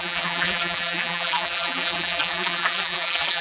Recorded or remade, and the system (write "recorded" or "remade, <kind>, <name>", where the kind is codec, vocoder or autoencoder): remade, vocoder, BigVGAN v2